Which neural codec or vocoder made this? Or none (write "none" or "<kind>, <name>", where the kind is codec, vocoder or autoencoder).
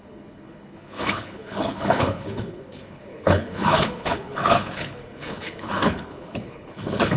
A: codec, HILCodec